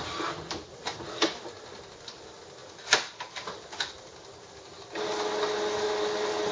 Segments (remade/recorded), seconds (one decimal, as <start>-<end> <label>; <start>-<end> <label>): 0.0-6.5 recorded